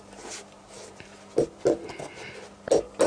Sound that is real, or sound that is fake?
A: real